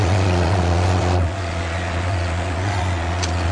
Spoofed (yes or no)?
yes